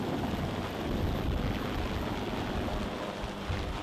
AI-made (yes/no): no